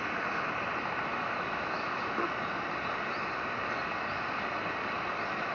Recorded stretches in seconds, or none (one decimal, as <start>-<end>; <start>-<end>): 0.0-1.1; 2.1-5.5